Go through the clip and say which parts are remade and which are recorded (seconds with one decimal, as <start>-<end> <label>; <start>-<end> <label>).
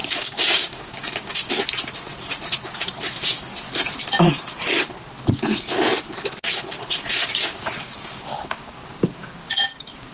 0.0-1.6 remade; 1.6-7.2 recorded; 7.2-8.7 remade; 8.7-9.1 recorded; 9.1-10.1 remade